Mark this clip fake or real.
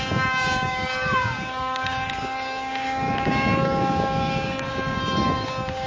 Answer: fake